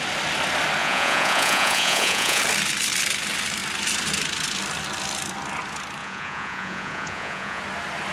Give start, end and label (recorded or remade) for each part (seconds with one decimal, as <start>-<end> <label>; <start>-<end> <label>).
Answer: 0.0-0.8 recorded; 0.8-2.4 remade; 2.4-6.0 recorded; 6.0-7.6 remade; 7.6-8.1 recorded